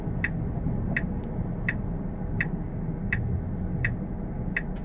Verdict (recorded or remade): recorded